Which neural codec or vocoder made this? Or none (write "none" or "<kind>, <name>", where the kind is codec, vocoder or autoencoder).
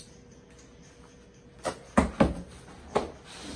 none